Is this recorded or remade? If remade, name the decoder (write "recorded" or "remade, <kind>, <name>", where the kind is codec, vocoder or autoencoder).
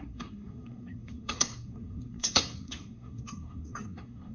remade, codec, SNAC